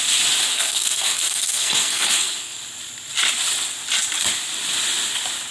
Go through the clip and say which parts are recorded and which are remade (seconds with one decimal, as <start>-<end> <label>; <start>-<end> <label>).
0.0-0.5 recorded; 0.5-2.6 remade; 2.6-5.5 recorded